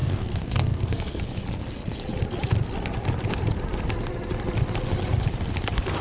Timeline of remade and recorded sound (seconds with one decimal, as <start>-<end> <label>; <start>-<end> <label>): 0.0-1.2 remade; 1.2-6.0 recorded